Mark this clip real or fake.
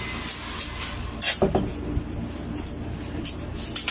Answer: real